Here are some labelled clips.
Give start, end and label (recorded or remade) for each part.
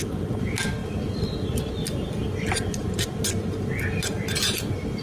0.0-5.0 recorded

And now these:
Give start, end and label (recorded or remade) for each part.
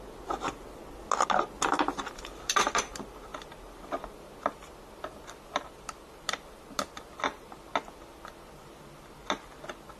0.0-10.0 recorded